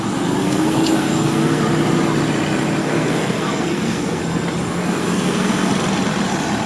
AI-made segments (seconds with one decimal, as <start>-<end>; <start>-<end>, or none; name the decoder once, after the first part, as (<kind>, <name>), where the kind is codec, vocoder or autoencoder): 0.4-1.6 (codec, SNAC); 2.8-4.2; 4.8-5.7